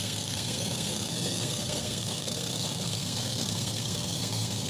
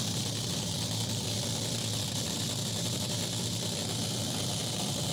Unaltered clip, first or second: second